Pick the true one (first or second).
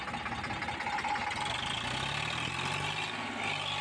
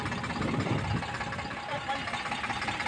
first